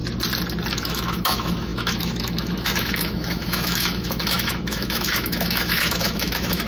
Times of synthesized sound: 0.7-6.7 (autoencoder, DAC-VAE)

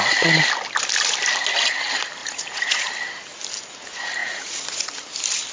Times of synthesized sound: 2.2-2.9 (vocoder, Vocos); 4.2-4.9